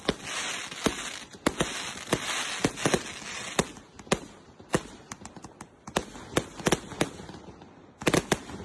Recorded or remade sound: recorded